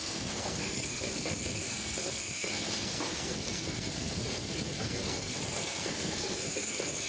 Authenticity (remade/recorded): remade